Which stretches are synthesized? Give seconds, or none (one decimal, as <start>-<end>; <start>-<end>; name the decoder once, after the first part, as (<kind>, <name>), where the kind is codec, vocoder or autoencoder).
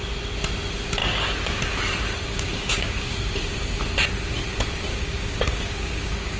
1.0-1.5 (codec, DAC); 2.3-3.8; 4.9-6.4